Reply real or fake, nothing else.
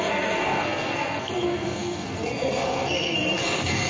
fake